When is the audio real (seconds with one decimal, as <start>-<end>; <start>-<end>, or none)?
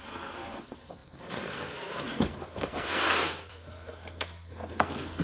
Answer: none